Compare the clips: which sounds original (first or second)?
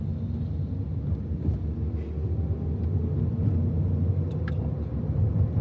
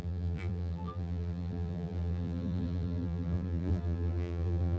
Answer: first